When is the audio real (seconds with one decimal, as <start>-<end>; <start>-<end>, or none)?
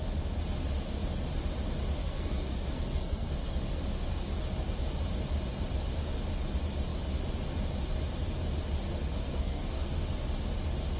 0.0-2.0; 3.8-9.0; 10.0-11.0